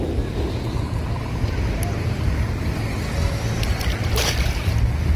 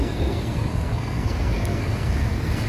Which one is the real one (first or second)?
first